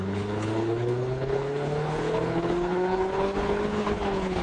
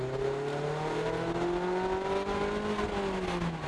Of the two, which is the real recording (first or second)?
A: second